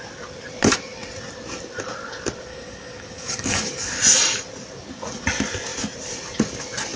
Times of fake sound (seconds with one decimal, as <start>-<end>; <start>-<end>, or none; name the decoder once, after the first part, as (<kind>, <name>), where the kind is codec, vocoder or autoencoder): 2.5-4.0 (codec, DAC)